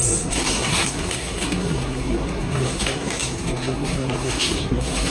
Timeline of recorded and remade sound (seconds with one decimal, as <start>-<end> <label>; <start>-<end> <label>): 0.0-5.1 remade